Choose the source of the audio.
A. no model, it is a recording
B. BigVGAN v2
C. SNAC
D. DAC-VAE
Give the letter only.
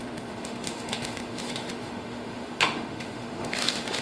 D